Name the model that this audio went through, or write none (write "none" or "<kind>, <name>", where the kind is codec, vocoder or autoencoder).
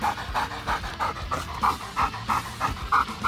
none